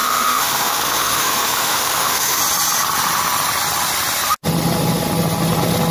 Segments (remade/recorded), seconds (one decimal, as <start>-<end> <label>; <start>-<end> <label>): 0.0-2.4 remade; 2.4-5.9 recorded